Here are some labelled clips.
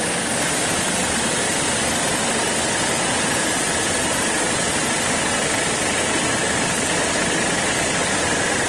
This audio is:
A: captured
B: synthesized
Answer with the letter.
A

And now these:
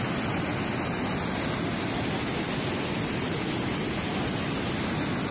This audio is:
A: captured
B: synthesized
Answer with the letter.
A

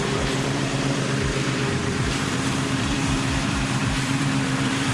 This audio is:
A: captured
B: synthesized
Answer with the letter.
B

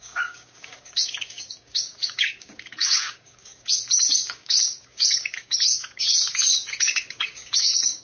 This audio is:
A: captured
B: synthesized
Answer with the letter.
B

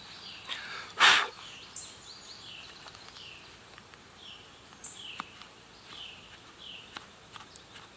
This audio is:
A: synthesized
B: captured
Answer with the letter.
B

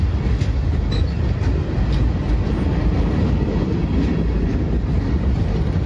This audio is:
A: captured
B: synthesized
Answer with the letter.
A